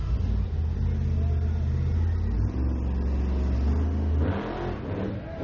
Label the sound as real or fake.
real